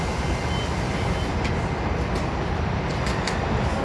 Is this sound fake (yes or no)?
no